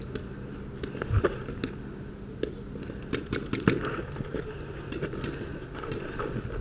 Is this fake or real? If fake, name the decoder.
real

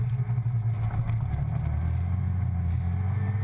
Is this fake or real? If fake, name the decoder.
real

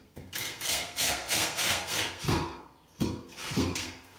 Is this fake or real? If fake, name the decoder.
fake, codec, SNAC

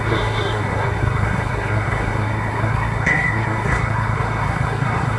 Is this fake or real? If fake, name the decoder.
fake, codec, SNAC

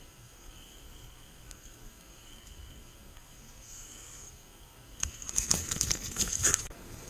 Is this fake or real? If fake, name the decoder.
fake, codec, SNAC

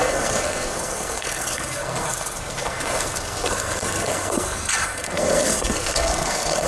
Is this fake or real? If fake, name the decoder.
fake, codec, SNAC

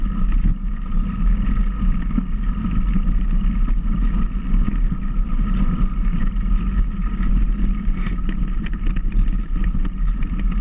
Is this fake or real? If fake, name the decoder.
real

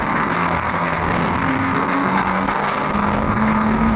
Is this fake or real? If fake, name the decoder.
fake, codec, SNAC